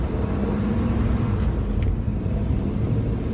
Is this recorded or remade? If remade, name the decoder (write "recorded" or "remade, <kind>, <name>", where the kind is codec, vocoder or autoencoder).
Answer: recorded